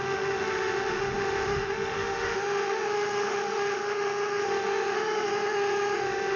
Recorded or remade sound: remade